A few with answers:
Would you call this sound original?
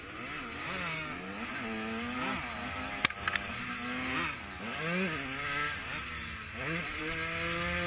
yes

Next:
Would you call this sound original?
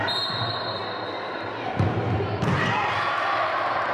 yes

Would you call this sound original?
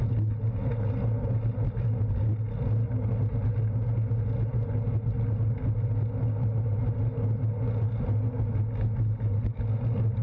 yes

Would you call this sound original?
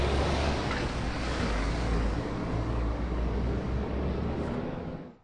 no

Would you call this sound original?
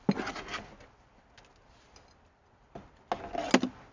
yes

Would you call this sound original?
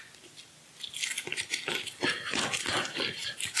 yes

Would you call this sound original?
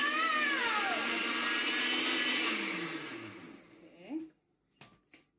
yes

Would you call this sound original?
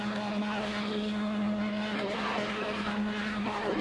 no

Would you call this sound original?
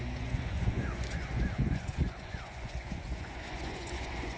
no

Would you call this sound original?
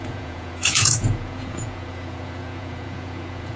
no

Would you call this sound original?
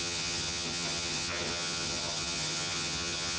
no